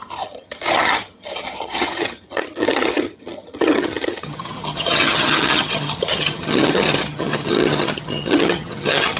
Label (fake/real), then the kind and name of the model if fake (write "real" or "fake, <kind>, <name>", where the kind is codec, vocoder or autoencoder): fake, vocoder, HiFi-GAN